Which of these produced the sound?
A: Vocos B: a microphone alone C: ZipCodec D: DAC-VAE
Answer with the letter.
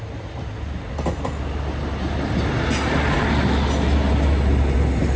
B